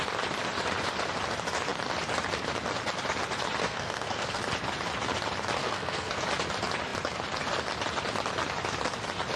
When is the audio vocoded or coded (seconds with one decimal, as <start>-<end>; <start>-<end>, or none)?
3.6-4.4; 5.6-6.2